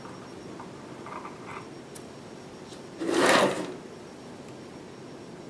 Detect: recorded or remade recorded